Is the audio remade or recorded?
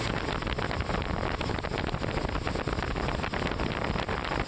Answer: recorded